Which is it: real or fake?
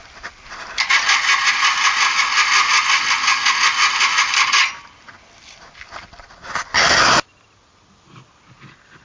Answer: real